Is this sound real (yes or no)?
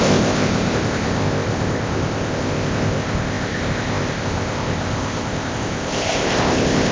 no